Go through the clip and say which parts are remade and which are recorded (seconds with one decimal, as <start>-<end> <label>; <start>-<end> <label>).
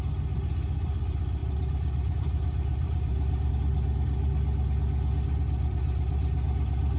0.0-1.4 recorded; 1.4-3.5 remade; 3.5-7.0 recorded